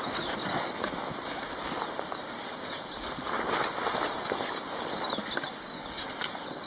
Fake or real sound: real